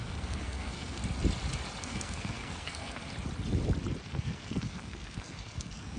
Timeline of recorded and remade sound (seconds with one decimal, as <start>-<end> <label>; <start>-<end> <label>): 0.0-1.0 remade; 1.0-1.8 recorded; 1.8-3.0 remade; 3.0-4.0 recorded; 4.0-6.0 remade